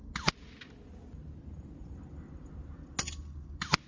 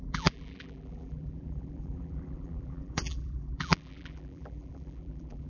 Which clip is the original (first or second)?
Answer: first